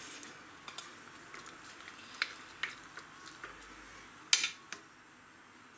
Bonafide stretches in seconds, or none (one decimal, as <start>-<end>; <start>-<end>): 0.0-5.8